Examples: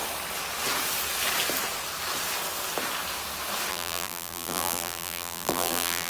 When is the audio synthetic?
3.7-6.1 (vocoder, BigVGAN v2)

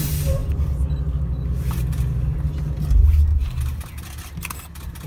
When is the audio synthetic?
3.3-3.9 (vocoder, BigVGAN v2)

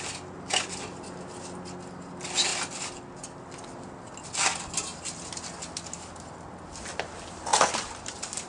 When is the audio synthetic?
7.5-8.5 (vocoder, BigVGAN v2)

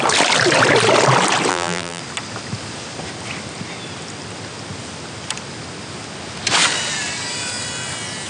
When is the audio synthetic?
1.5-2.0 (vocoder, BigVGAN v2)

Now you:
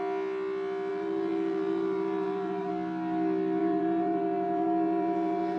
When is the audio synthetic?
0.9-2.7 (vocoder, BigVGAN v2); 3.6-5.6

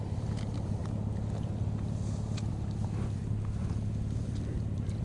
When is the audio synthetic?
0.0-0.8 (vocoder, BigVGAN v2); 2.5-3.2; 4.2-5.0